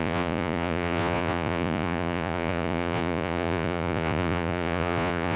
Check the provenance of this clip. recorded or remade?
remade